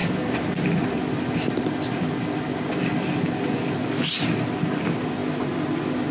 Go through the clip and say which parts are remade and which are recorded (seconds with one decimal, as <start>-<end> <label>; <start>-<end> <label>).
0.0-6.1 recorded